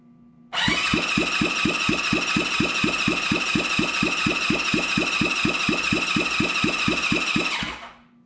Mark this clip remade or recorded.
recorded